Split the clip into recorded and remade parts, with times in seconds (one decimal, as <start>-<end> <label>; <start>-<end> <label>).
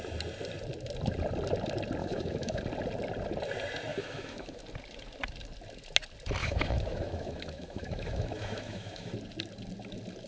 0.0-2.0 recorded; 2.0-2.6 remade; 2.6-3.9 recorded; 3.9-4.6 remade; 4.6-6.4 recorded; 6.4-9.1 remade; 9.1-10.3 recorded